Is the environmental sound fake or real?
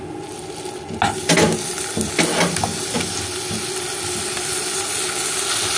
real